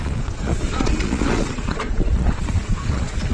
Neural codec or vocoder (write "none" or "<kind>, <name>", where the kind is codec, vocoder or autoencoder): vocoder, Vocos